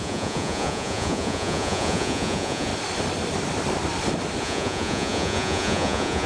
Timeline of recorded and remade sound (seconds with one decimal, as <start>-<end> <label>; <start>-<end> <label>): 0.0-2.7 remade; 2.7-4.4 recorded; 4.4-6.3 remade

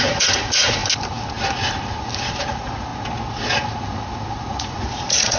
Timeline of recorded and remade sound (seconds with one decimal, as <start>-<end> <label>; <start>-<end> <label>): 0.0-0.8 remade; 0.8-2.4 recorded; 2.4-2.9 remade; 2.9-4.4 recorded; 4.4-5.4 remade

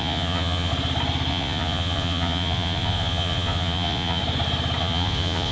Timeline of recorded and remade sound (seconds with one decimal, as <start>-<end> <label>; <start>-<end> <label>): 0.0-0.7 remade; 0.7-1.3 recorded; 1.3-4.2 remade; 4.2-4.8 recorded; 4.8-5.5 remade

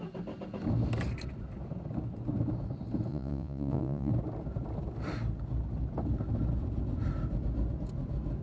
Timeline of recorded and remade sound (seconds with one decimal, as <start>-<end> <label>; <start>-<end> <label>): 0.0-3.1 recorded; 3.1-4.1 remade; 4.1-8.4 recorded

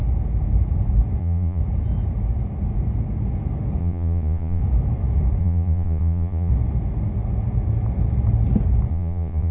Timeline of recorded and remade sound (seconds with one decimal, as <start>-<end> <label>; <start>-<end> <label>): 0.0-1.2 recorded; 1.2-1.6 remade; 1.6-3.8 recorded; 3.8-4.6 remade; 4.6-5.4 recorded; 5.4-6.5 remade; 6.5-8.9 recorded; 8.9-9.5 remade